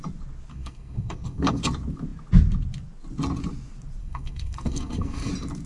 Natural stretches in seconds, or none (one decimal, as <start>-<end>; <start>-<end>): 0.0-0.5; 1.6-4.0; 5.3-5.7